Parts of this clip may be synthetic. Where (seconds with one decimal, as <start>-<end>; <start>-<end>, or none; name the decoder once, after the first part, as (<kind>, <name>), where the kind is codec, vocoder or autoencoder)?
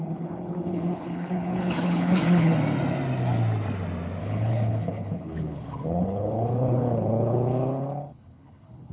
0.0-2.5 (codec, HILCodec); 4.2-8.9